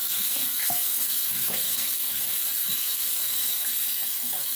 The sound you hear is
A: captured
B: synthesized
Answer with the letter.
B